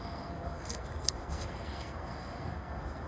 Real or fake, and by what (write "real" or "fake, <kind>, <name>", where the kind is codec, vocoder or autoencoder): fake, codec, SNAC